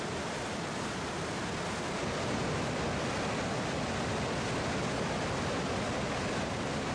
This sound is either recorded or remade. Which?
recorded